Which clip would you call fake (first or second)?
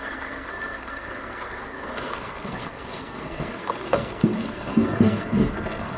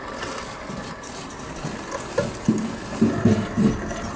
first